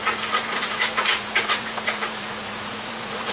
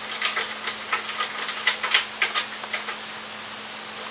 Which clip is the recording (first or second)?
second